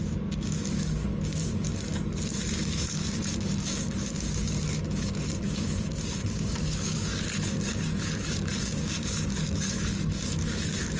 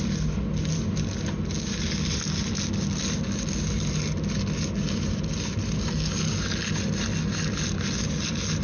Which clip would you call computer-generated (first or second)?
first